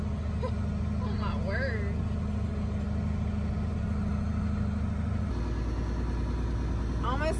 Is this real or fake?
real